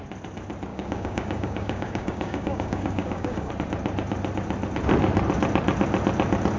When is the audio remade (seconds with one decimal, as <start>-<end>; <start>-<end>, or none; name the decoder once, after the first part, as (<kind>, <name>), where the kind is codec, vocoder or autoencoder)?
0.7-3.5 (codec, DAC)